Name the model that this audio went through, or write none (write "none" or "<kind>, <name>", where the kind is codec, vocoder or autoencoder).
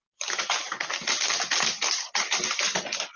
none